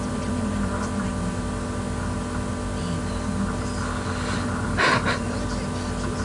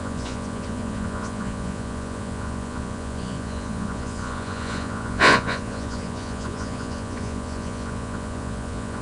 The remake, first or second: second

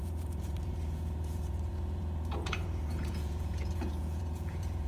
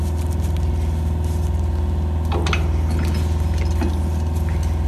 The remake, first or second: first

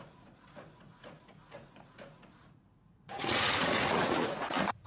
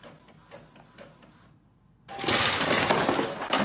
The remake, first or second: first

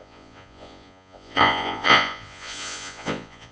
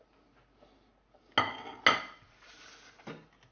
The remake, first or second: first